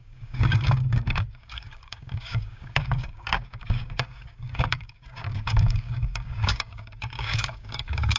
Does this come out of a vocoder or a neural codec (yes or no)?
yes